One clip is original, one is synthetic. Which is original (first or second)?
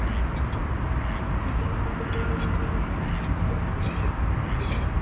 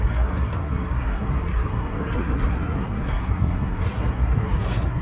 first